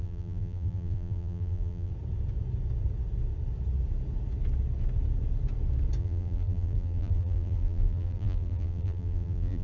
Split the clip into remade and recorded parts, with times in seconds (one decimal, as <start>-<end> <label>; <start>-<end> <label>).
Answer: 0.0-1.9 remade; 1.9-6.0 recorded; 6.0-9.6 remade